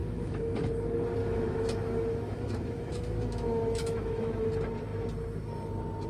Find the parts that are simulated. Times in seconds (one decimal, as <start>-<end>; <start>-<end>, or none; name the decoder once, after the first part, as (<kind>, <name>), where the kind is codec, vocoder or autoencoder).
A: 0.0-0.7 (autoencoder, DAC-VAE); 1.2-4.5